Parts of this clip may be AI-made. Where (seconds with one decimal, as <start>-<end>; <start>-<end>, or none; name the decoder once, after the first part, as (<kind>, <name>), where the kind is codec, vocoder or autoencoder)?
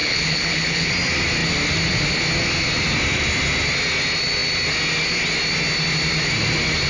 0.0-0.9 (codec, HILCodec)